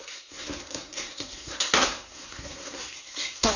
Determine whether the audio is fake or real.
fake